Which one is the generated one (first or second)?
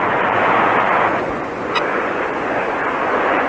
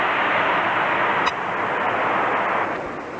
first